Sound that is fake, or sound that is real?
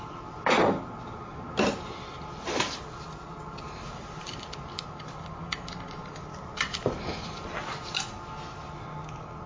real